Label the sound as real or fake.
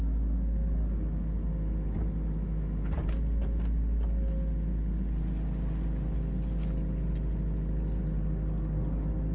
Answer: real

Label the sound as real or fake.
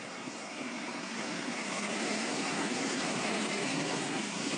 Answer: fake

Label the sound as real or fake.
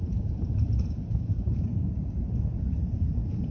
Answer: fake